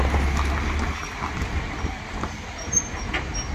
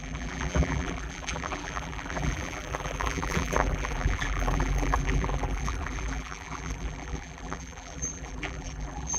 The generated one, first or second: second